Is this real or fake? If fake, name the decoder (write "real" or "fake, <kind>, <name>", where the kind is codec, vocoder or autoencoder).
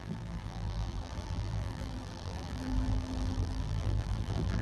fake, vocoder, BigVGAN v2